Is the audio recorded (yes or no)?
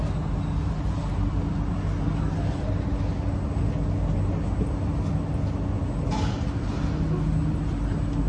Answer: yes